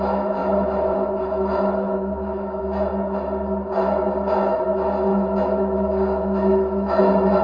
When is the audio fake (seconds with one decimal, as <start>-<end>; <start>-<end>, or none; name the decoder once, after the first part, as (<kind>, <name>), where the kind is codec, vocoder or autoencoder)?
0.4-2.6 (autoencoder, DAC-VAE); 5.1-7.0